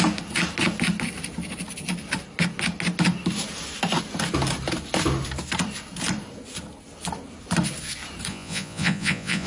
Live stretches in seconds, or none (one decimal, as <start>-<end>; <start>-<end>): 0.0-8.3